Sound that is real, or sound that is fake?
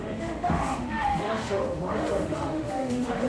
fake